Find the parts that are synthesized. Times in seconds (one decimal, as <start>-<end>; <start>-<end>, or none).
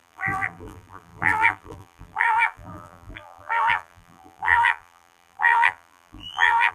0.0-6.7